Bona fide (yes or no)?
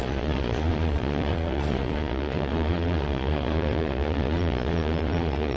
no